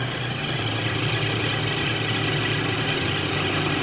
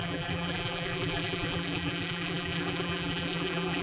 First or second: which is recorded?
first